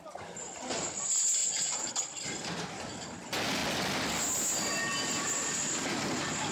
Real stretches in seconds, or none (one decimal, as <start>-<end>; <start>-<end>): 0.0-1.4; 1.9-6.5